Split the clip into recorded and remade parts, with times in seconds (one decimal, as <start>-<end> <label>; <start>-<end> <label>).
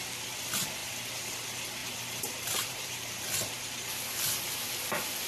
0.0-0.8 recorded; 0.8-1.3 remade; 1.3-1.8 recorded; 1.8-3.5 remade; 3.5-5.3 recorded